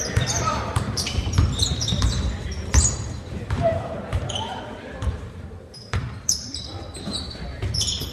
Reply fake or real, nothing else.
fake